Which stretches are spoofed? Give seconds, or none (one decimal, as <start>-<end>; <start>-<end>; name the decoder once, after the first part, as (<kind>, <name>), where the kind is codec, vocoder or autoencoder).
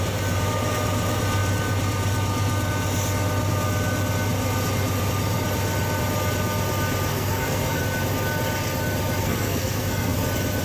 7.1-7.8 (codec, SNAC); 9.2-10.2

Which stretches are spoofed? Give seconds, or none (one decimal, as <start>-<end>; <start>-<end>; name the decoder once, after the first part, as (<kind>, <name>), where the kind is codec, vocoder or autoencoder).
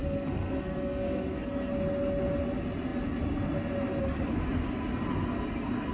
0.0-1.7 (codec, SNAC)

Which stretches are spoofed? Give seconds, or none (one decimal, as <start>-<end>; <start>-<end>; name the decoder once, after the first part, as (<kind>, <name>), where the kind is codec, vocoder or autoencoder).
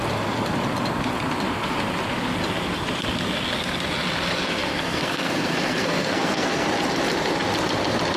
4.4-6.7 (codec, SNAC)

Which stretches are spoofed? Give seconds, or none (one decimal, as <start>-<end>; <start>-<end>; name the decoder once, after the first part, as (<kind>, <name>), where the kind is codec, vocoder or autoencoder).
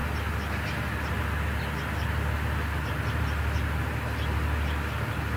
none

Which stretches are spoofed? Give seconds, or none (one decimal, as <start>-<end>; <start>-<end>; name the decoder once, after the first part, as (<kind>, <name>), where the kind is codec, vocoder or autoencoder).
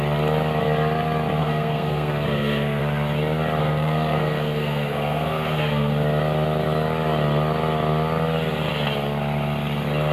1.4-2.8 (codec, SNAC); 3.6-5.9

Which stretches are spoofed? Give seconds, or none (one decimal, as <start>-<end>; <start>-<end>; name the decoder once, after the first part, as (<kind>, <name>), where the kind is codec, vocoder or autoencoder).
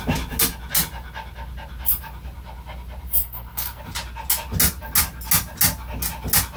3.2-3.8 (codec, SNAC)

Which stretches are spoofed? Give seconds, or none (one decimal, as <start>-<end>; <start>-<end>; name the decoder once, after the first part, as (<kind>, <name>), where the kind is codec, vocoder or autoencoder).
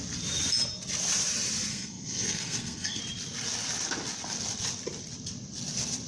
1.7-3.0 (codec, SNAC)